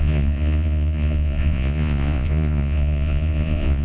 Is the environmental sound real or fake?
fake